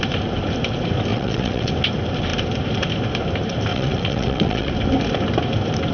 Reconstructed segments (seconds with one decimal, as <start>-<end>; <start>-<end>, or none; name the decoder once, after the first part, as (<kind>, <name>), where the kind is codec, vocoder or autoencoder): 1.1-1.7 (vocoder, WaveNeXt); 3.7-4.7